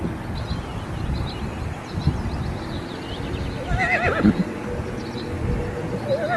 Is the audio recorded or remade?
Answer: recorded